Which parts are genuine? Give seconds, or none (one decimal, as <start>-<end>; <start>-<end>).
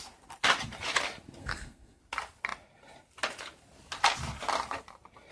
0.0-1.4; 2.0-5.3